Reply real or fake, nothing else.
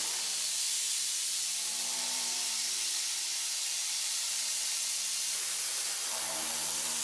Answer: fake